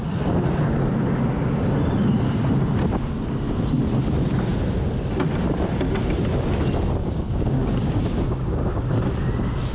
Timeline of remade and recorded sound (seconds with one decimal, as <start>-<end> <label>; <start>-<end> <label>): 0.0-7.0 recorded; 7.0-8.9 remade; 8.9-9.7 recorded